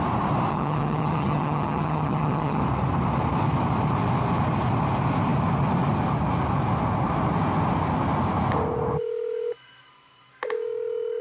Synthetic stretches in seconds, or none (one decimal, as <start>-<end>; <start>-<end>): 0.5-2.6